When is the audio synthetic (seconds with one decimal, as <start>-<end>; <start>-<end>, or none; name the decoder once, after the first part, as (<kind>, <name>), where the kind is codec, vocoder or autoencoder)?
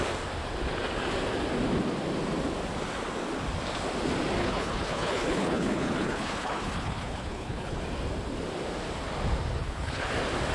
4.4-7.8 (codec, HILCodec); 9.6-10.1